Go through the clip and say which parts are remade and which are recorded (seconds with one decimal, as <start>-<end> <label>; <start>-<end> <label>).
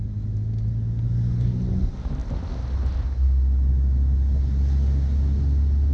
0.0-5.9 recorded